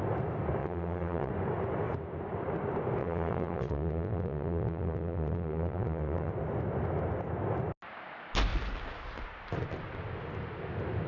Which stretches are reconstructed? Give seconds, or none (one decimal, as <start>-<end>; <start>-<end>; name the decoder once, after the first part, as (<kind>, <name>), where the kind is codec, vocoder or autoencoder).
0.6-1.3 (vocoder, Vocos); 3.0-6.3